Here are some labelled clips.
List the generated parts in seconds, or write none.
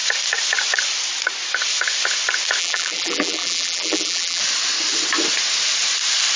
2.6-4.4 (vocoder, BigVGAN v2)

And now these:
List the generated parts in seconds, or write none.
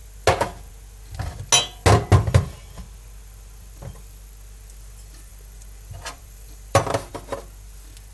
5.3-7.1 (vocoder, BigVGAN v2)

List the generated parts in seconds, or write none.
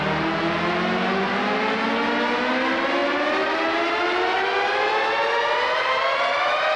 none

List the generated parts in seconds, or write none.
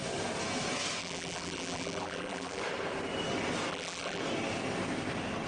1.0-2.6 (vocoder, BigVGAN v2); 3.7-4.2